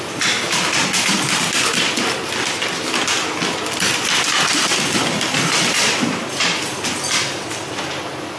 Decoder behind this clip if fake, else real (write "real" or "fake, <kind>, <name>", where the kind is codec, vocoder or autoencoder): real